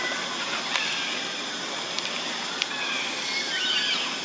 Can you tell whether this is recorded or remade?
recorded